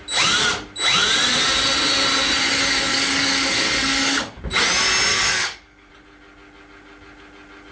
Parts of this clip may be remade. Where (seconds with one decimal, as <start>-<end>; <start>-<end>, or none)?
2.9-4.4; 5.1-5.9